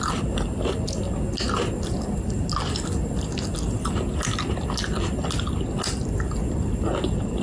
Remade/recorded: recorded